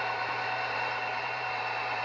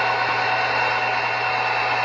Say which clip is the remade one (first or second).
first